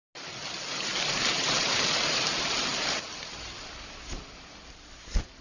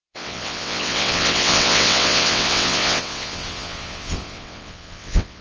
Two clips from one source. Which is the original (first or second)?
first